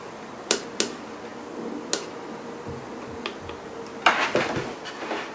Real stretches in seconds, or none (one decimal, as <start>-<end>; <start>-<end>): 0.0-5.3